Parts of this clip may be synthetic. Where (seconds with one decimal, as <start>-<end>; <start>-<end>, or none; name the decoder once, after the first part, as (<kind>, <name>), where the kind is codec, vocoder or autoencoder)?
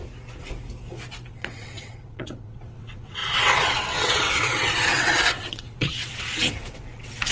1.3-7.3 (vocoder, WaveNeXt)